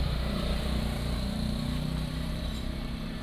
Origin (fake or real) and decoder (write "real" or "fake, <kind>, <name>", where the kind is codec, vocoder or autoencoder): fake, vocoder, BigVGAN v2